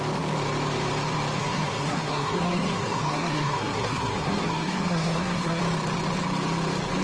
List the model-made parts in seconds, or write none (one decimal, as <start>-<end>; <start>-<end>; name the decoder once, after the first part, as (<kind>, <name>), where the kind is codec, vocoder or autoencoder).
1.4-5.6 (codec, SNAC)